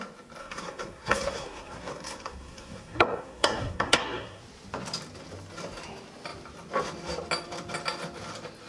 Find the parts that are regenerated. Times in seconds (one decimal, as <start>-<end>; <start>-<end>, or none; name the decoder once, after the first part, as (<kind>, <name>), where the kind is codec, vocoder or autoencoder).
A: 0.4-4.4 (codec, SNAC)